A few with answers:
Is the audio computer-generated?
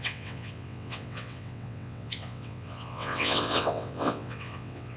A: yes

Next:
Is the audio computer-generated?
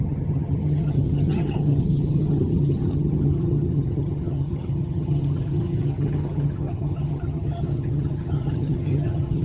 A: yes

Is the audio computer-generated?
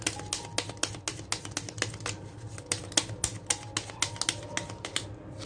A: no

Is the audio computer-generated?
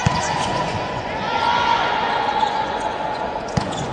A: yes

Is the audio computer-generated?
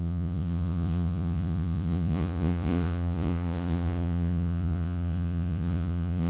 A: yes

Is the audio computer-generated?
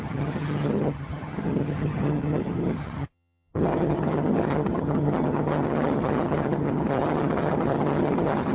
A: yes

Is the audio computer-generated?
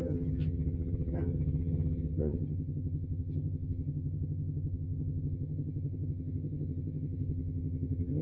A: yes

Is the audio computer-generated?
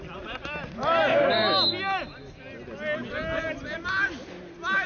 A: no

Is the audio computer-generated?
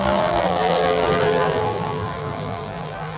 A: yes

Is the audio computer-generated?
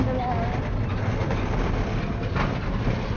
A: no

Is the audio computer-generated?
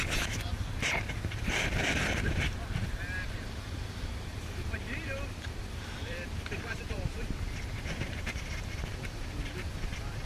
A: yes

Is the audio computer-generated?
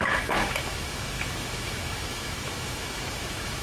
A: yes